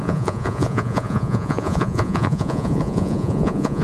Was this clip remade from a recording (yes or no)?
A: yes